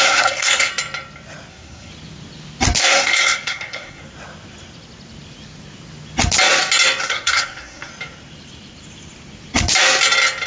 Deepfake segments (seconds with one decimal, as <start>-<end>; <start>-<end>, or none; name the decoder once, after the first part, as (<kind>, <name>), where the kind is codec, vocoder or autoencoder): 0.0-0.7 (codec, SNAC); 1.5-1.9; 2.8-4.0; 7.0-7.9